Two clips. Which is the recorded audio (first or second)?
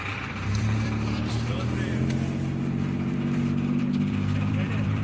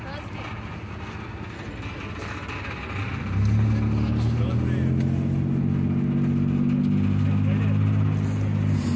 second